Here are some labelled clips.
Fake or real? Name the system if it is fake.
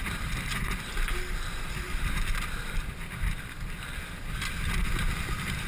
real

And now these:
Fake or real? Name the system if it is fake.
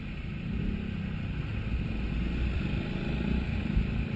real